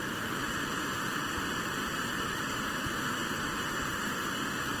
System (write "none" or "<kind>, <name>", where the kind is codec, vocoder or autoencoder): none